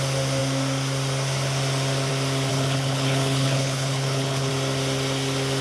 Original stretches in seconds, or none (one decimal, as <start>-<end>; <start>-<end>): 0.0-2.5; 4.5-5.6